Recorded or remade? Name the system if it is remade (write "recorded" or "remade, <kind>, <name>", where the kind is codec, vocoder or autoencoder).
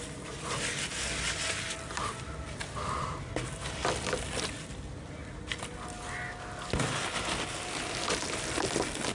recorded